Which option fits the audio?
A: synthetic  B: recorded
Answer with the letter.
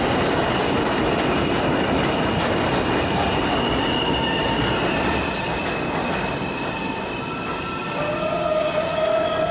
B